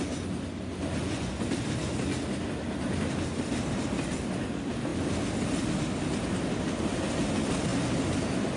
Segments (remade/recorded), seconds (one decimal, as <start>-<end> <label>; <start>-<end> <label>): 0.0-1.0 recorded; 1.0-1.5 remade; 1.5-8.6 recorded